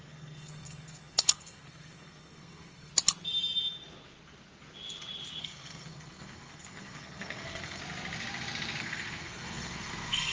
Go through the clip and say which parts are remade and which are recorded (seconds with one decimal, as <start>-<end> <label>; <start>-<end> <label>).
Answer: 0.0-2.9 remade; 2.9-5.4 recorded; 5.4-7.8 remade; 7.8-8.8 recorded; 8.8-10.3 remade